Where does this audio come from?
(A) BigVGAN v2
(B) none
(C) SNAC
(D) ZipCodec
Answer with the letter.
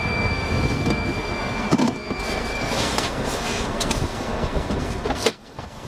C